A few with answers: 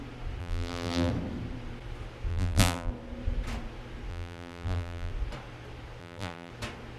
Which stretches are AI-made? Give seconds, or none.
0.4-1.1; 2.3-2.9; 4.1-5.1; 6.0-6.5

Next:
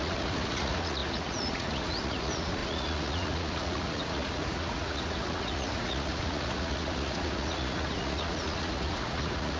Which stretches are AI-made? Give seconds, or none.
0.0-9.6